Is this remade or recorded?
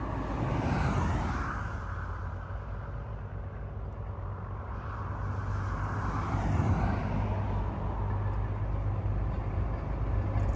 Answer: recorded